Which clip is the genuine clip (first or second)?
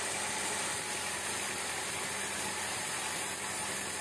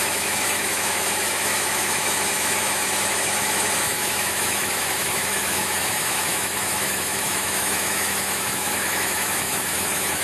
first